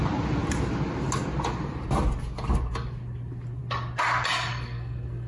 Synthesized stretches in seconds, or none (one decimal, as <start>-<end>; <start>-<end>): 4.5-5.3